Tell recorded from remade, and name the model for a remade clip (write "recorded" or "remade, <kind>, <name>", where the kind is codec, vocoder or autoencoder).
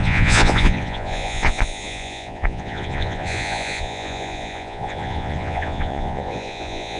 remade, vocoder, Vocos